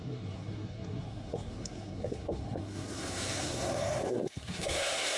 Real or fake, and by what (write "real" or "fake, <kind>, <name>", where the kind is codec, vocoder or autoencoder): fake, codec, SNAC